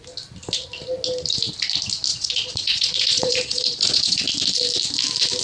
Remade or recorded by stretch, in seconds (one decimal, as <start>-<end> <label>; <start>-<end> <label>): 0.0-2.1 recorded; 2.1-4.2 remade; 4.2-5.4 recorded